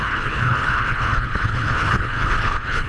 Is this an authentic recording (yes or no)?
no